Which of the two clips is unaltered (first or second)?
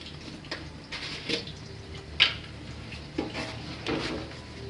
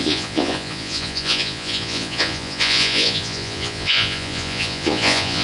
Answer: first